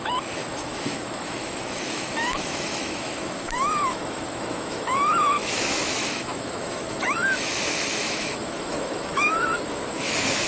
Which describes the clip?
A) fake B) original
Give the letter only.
A